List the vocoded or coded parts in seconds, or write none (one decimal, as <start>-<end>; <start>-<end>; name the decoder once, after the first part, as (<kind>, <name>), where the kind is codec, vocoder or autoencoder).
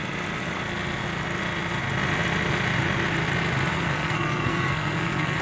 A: 3.7-5.4 (codec, SNAC)